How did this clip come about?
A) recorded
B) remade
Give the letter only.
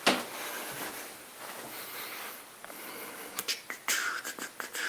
A